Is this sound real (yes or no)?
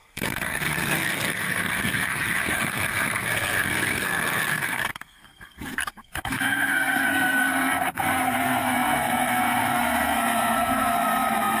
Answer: no